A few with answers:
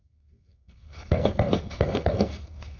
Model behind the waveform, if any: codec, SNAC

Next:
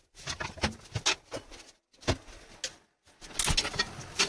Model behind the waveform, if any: none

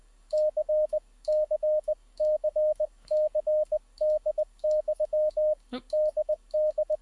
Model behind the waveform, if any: codec, DAC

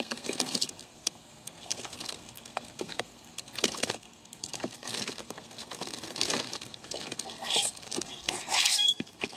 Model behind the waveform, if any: codec, SNAC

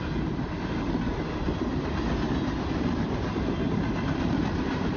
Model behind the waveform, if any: none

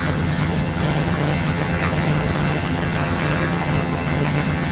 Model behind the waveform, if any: vocoder, HiFi-GAN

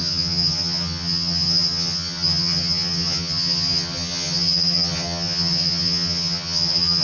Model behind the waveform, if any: vocoder, HiFi-GAN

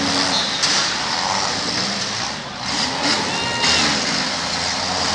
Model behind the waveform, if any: none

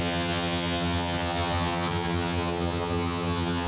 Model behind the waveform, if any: vocoder, HiFi-GAN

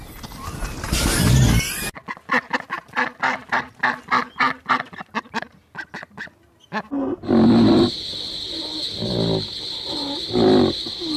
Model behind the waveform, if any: none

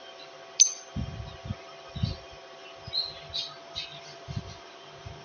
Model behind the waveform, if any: none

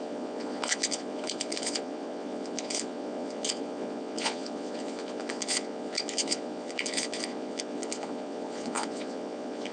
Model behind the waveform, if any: vocoder, Vocos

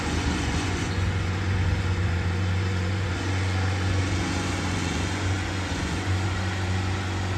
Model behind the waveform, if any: vocoder, Vocos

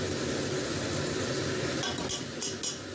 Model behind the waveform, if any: none